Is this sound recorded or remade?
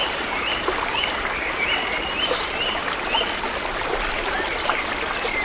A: recorded